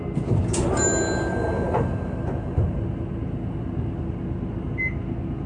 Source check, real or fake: real